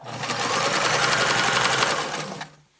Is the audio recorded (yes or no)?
yes